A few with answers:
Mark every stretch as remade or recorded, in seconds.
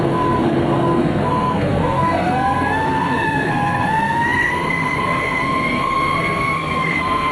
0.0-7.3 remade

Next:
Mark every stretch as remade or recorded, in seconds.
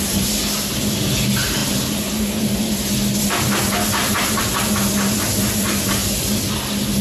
0.0-7.0 recorded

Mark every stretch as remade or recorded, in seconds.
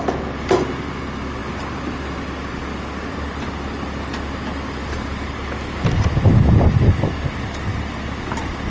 0.0-8.7 recorded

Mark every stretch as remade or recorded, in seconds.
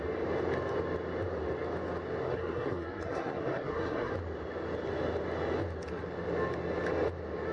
0.0-2.2 recorded; 2.2-4.1 remade; 4.1-7.5 recorded